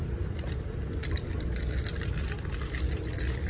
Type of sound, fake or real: fake